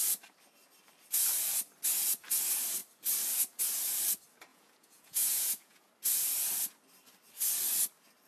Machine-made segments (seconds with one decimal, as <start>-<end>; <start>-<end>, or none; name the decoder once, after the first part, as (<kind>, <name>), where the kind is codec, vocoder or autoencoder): 4.5-5.9 (vocoder, Vocos)